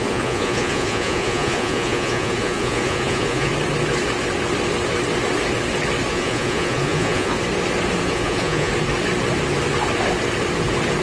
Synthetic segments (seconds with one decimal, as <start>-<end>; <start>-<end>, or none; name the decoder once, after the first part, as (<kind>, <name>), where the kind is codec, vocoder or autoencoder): 0.0-3.5 (vocoder, Vocos); 6.1-7.4; 8.0-8.7